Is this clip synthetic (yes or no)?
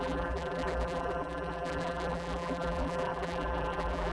yes